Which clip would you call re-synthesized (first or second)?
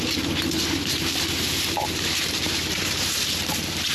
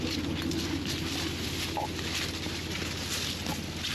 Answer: first